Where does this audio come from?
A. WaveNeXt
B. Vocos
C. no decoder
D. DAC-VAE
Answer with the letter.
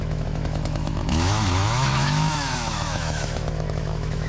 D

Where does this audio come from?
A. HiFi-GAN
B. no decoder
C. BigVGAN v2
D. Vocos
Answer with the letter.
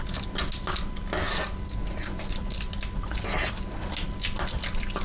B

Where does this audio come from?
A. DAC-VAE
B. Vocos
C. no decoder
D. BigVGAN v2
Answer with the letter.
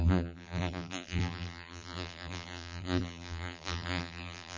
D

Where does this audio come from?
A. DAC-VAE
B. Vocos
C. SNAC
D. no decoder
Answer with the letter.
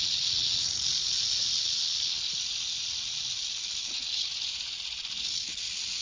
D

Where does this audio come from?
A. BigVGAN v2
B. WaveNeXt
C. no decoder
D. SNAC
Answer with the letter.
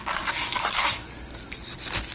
C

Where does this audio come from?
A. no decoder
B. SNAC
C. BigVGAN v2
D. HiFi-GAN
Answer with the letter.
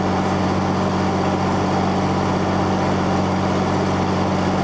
A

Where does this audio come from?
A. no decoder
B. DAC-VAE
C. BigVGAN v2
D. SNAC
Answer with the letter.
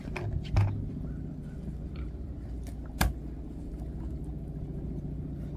A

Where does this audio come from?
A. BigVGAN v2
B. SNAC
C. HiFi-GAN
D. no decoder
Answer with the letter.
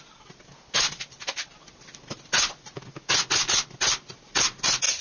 D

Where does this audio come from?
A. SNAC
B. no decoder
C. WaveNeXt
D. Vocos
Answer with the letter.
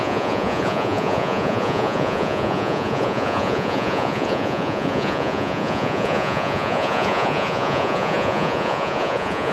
D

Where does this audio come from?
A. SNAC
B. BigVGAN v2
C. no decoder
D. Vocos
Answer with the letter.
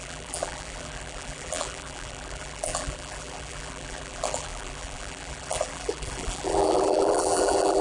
B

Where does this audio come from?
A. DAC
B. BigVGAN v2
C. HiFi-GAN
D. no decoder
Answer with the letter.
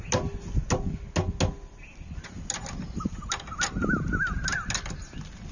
D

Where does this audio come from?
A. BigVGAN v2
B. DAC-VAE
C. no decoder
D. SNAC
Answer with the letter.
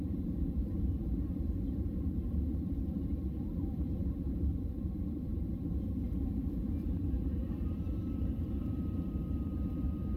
A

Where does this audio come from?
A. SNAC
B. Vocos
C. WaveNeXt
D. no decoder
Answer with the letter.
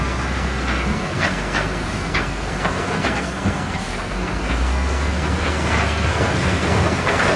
A